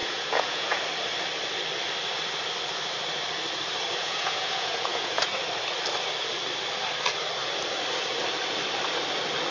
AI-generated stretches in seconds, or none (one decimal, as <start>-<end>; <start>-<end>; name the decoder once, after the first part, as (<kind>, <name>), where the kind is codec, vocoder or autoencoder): 0.0-0.8 (vocoder, Vocos); 4.0-5.3

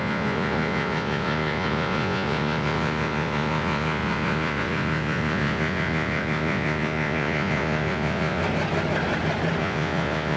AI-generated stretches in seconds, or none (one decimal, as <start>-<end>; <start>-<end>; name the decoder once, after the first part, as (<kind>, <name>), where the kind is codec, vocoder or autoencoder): 0.0-8.4 (vocoder, Vocos); 9.6-10.4

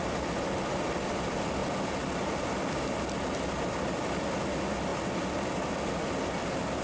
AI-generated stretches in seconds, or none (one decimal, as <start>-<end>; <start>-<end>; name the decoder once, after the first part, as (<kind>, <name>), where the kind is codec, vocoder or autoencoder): none